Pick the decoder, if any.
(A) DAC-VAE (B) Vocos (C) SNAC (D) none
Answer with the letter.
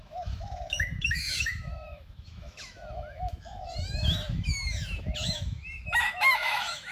A